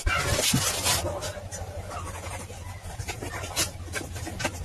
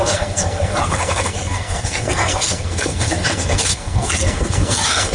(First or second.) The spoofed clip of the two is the second